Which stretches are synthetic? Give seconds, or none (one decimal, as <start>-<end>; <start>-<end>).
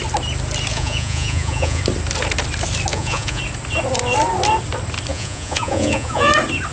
0.7-1.8; 2.9-3.4; 5.1-6.3